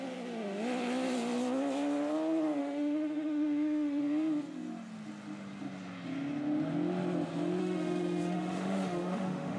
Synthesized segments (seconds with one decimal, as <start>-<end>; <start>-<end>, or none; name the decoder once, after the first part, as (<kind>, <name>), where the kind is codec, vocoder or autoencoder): 2.6-4.0 (autoencoder, DAC-VAE); 7.6-9.6